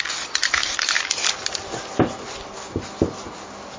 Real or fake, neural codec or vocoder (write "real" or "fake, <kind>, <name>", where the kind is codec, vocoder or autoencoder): real